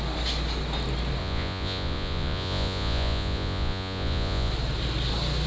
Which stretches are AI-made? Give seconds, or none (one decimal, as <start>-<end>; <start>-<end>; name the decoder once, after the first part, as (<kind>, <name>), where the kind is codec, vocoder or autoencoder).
1.2-4.5 (vocoder, Vocos)

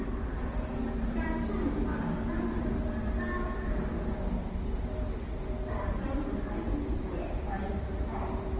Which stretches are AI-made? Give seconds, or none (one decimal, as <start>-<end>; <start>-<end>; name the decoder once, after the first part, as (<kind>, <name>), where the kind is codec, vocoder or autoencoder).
0.0-8.6 (vocoder, BigVGAN v2)